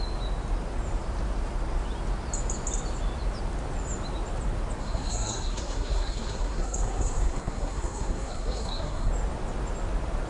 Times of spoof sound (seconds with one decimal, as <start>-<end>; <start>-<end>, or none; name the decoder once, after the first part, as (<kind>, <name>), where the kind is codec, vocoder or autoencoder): 4.8-9.1 (codec, SNAC)